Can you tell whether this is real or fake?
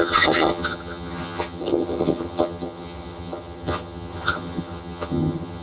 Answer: fake